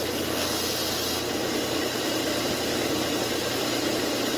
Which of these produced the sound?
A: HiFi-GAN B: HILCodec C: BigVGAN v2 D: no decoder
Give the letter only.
D